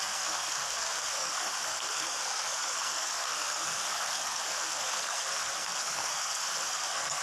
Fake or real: fake